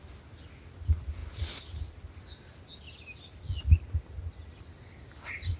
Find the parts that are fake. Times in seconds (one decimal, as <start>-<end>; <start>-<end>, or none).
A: none